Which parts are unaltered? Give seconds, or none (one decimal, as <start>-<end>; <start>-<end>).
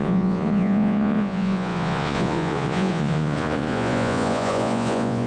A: none